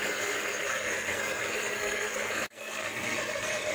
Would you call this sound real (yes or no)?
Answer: no